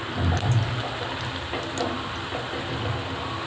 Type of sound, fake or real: real